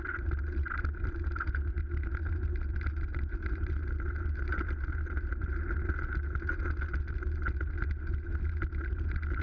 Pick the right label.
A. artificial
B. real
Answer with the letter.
B